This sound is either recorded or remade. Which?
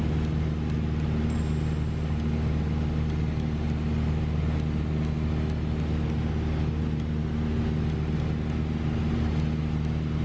recorded